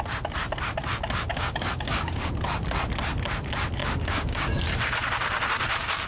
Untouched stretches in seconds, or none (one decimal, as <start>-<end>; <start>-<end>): 0.0-1.3; 2.3-3.8; 4.6-6.1